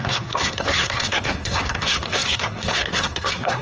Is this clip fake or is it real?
fake